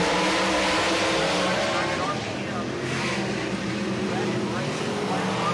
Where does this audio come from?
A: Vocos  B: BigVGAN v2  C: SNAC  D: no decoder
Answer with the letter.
D